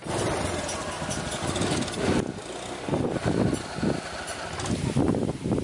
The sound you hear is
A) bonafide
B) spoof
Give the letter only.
A